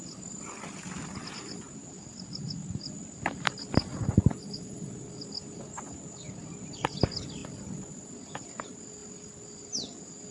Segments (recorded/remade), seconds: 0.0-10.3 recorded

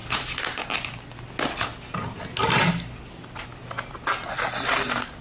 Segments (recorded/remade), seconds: 0.0-5.2 recorded

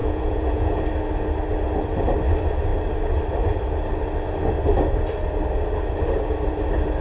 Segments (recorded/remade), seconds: 0.0-0.8 remade; 0.8-7.0 recorded

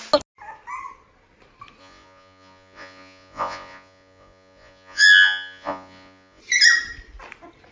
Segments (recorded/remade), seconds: 0.0-1.8 recorded; 1.8-6.4 remade; 6.4-7.7 recorded